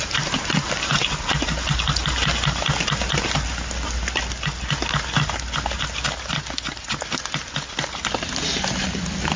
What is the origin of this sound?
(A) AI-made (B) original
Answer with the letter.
B